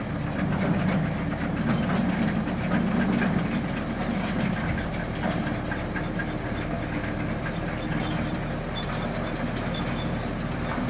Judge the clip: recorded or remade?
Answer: recorded